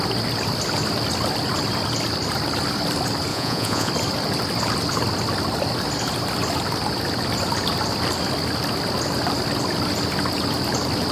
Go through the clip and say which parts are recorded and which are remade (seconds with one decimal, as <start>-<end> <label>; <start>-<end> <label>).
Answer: 0.0-3.3 recorded; 3.3-3.9 remade; 3.9-11.1 recorded